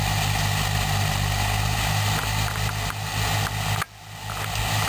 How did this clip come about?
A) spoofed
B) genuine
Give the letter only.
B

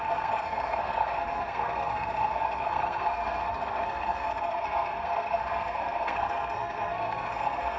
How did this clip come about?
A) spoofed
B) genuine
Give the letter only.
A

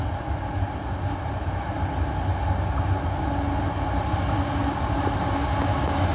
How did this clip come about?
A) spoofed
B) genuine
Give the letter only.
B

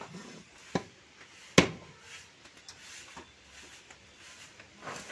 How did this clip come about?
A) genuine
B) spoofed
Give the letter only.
A